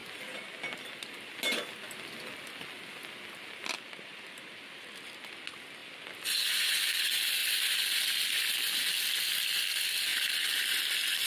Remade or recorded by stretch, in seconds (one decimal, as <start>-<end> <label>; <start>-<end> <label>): 0.0-5.8 recorded; 5.8-6.7 remade; 6.7-7.4 recorded; 7.4-8.0 remade; 8.0-11.3 recorded

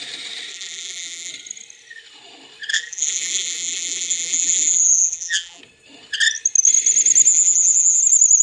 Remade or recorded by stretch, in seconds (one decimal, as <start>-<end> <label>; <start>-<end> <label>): 0.0-0.5 recorded; 0.5-1.3 remade; 1.3-2.7 recorded; 2.7-5.6 remade; 5.6-7.3 recorded; 7.3-8.0 remade; 8.0-8.4 recorded